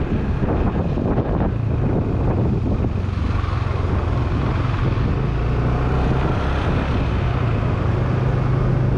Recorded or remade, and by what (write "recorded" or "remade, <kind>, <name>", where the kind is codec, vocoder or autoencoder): recorded